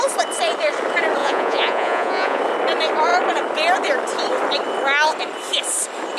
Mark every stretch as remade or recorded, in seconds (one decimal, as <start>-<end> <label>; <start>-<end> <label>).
0.0-1.2 recorded; 1.2-2.4 remade; 2.4-6.2 recorded